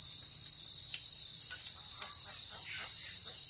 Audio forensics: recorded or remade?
remade